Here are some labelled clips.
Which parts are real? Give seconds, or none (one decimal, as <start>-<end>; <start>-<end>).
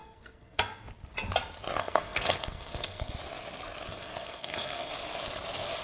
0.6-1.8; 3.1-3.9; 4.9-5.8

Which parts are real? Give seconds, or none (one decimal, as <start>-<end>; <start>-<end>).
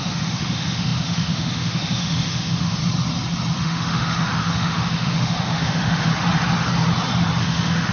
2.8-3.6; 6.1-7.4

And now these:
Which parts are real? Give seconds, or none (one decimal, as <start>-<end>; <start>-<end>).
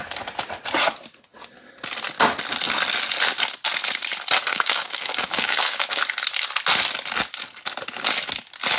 0.0-4.5; 6.0-8.8